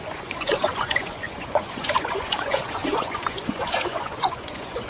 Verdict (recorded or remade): remade